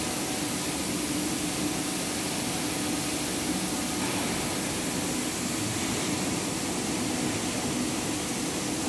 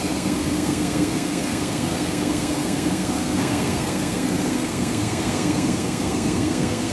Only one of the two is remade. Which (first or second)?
second